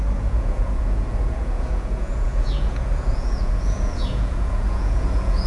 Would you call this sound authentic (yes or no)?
no